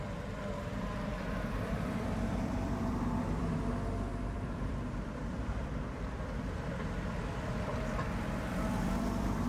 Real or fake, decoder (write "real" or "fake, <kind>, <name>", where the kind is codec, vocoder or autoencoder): fake, vocoder, BigVGAN v2